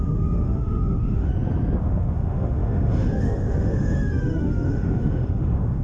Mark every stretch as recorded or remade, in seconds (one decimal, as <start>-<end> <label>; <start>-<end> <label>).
0.0-1.3 remade; 1.3-1.8 recorded; 1.8-5.8 remade